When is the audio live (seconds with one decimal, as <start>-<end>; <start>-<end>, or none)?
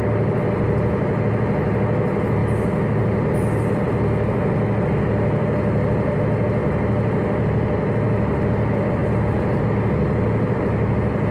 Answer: 0.0-11.3